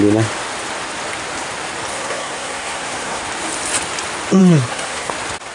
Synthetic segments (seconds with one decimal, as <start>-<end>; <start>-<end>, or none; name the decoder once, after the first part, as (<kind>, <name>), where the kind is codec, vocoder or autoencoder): 1.9-3.2 (codec, SNAC); 4.4-5.1